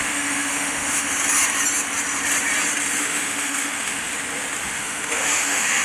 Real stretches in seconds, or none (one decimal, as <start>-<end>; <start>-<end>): 1.1-3.0; 4.1-4.6